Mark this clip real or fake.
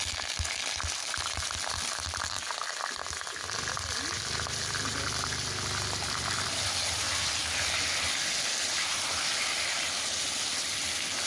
real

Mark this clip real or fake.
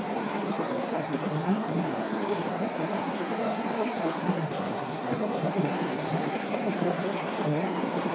fake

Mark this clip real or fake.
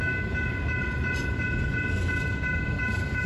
real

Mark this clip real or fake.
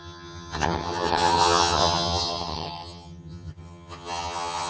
fake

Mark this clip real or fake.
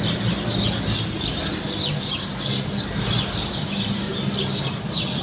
real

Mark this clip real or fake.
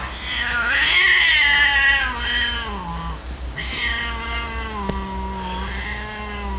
real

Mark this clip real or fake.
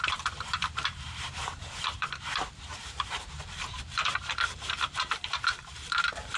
fake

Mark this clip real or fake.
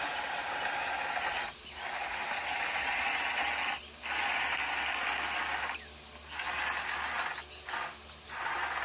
real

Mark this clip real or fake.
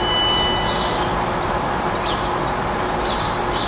real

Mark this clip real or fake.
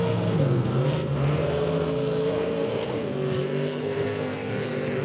fake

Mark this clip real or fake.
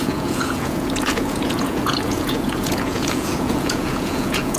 fake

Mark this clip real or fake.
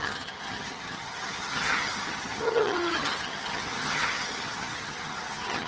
fake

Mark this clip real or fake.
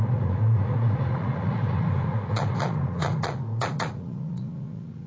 fake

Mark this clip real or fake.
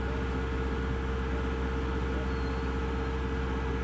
real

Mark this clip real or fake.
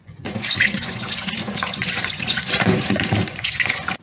fake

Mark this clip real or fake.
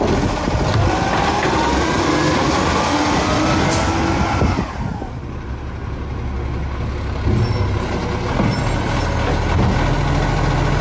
real